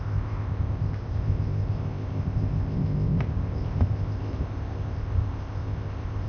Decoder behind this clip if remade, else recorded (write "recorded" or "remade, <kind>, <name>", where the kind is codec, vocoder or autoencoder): remade, codec, ZipCodec